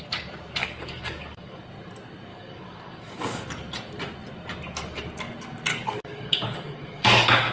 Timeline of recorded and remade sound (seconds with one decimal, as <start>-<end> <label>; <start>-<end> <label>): 0.0-0.6 recorded; 0.6-1.6 remade; 1.6-2.3 recorded; 2.3-3.5 remade; 3.5-5.7 recorded; 5.7-7.5 remade